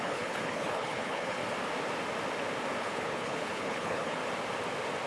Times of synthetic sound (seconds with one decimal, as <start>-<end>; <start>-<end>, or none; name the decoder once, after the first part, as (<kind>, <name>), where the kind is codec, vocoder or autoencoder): 0.0-1.4 (codec, HILCodec); 2.8-4.2